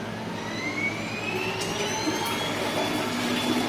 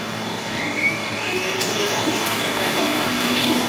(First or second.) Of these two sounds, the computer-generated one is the second